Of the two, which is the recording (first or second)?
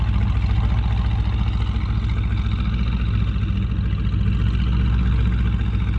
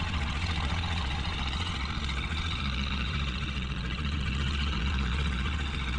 first